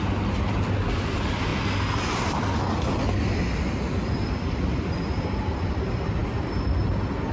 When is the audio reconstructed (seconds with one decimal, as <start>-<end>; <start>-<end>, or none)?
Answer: none

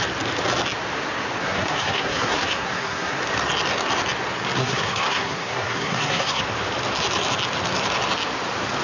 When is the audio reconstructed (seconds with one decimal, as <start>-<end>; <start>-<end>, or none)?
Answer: 1.4-3.2; 4.6-6.4

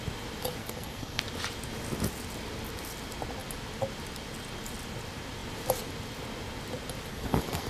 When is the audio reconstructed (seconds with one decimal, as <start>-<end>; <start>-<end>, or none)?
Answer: 0.6-1.2; 7.1-7.7

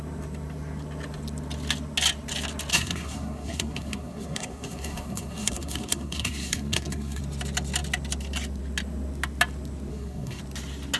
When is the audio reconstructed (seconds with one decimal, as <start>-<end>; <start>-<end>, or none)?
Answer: 2.7-7.2; 9.9-10.4

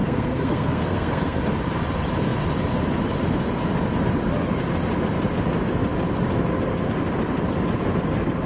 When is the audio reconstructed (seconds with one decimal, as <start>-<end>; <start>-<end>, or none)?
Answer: 0.0-1.4

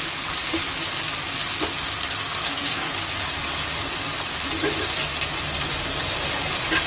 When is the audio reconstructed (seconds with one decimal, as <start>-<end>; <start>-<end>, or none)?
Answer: 2.2-2.9